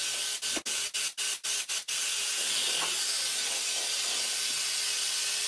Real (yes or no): yes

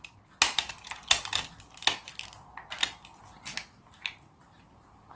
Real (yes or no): yes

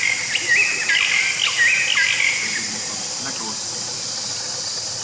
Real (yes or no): yes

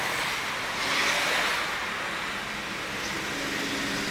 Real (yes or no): yes